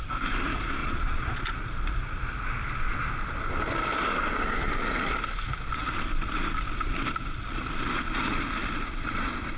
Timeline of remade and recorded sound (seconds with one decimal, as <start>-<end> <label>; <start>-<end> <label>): 0.0-0.8 recorded; 0.8-1.4 remade; 1.4-9.6 recorded